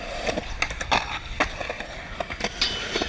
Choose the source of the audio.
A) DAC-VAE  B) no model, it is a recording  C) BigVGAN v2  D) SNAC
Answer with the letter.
B